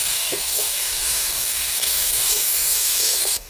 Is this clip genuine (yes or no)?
no